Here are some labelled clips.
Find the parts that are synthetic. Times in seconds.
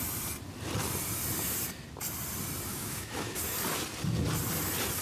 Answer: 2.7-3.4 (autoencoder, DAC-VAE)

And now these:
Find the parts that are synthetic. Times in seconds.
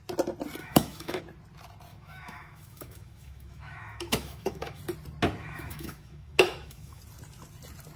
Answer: 0.6-1.2 (autoencoder, DAC-VAE); 1.9-4.8; 5.4-7.0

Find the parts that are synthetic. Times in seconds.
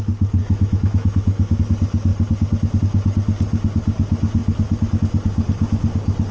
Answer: 0.4-1.6 (autoencoder, DAC-VAE)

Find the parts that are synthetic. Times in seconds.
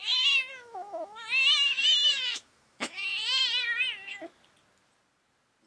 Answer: 0.0-3.4 (autoencoder, DAC-VAE)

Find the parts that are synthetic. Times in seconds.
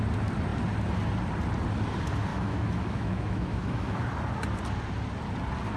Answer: 2.3-4.0 (autoencoder, DAC-VAE)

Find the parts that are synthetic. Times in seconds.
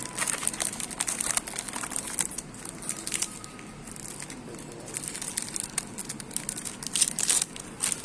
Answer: none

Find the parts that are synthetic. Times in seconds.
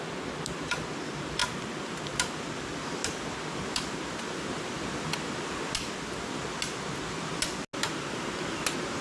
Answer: none